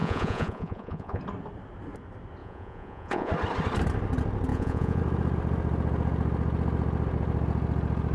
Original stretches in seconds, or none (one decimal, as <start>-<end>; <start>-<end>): 1.2-2.4; 3.3-4.5; 5.0-8.1